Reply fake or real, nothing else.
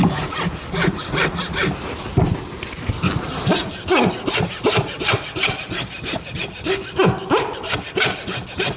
real